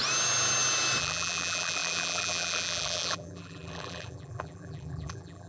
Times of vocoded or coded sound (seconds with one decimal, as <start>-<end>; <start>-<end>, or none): 1.0-5.5